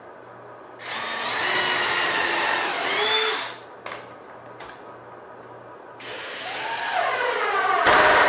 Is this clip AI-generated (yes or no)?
no